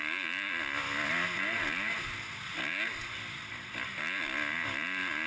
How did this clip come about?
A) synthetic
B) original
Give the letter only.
B